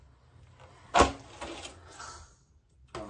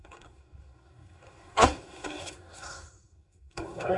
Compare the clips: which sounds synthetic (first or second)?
second